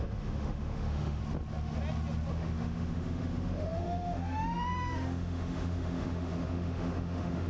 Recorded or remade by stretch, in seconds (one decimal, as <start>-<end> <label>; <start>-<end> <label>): 0.0-1.2 remade; 1.2-2.3 recorded; 2.3-7.5 remade